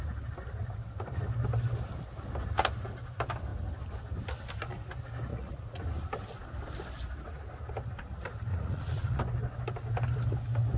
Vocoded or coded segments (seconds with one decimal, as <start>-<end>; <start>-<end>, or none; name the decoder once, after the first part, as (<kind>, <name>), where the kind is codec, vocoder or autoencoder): 5.3-5.8 (vocoder, Vocos); 8.5-9.2